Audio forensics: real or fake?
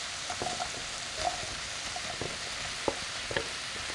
real